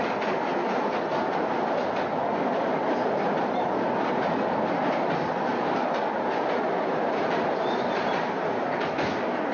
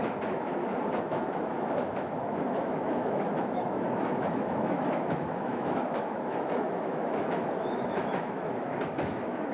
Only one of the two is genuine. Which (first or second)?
first